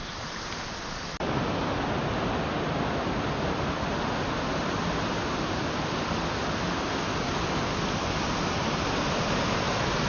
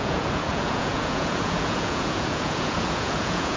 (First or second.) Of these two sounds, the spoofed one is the second